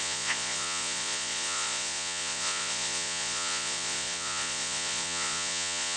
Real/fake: fake